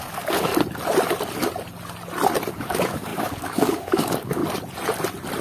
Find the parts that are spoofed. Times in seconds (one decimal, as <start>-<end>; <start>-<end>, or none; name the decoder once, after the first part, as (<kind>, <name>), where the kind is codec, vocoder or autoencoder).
0.0-0.5 (codec, DAC); 2.5-4.4